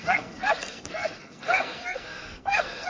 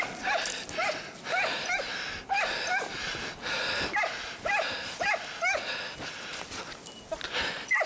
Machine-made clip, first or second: first